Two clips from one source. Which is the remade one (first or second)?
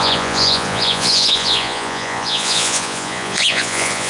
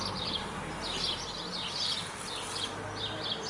first